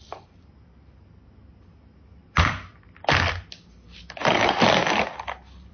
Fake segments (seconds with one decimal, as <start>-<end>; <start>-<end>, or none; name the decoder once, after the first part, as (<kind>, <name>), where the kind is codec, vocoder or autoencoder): none